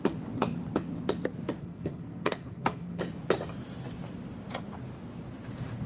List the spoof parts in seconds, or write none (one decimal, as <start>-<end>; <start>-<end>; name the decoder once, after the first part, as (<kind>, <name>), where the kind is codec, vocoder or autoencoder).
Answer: 1.6-3.0 (codec, SNAC)